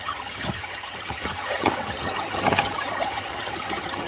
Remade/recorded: remade